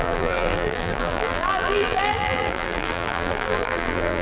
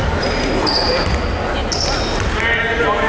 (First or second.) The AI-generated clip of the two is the first